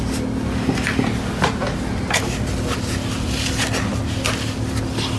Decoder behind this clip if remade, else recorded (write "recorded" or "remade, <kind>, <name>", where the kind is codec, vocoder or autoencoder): recorded